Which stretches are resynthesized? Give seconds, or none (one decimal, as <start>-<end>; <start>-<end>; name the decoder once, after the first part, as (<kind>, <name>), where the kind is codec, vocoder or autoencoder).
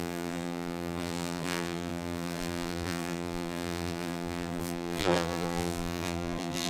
0.0-6.7 (vocoder, BigVGAN v2)